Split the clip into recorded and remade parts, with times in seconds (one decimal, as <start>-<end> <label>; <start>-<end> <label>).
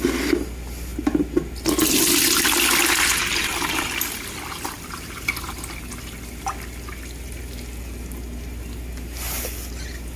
0.0-10.2 recorded